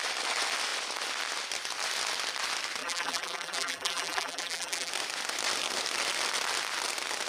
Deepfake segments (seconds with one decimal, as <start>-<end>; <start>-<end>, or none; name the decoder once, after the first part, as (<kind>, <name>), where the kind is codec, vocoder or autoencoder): 2.8-4.9 (vocoder, BigVGAN v2)